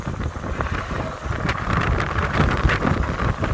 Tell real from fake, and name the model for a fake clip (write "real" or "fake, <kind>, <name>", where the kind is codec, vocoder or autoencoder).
real